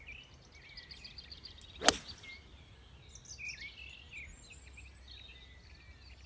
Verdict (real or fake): real